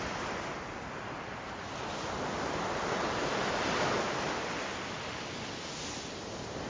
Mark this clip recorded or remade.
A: recorded